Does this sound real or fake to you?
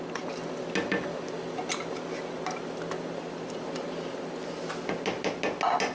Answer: real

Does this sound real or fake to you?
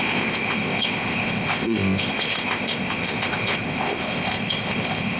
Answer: fake